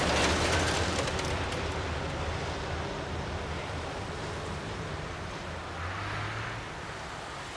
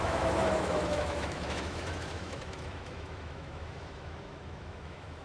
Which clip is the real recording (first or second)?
first